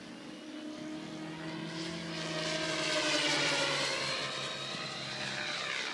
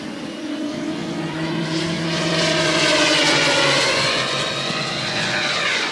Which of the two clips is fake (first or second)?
second